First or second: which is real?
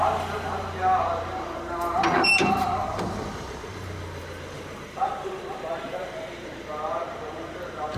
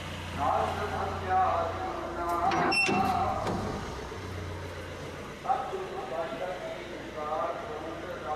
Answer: second